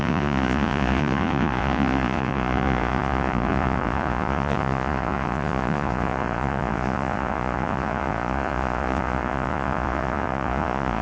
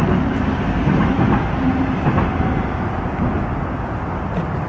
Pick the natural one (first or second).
second